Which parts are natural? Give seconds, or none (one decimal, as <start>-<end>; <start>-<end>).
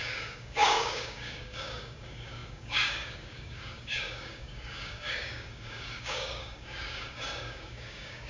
none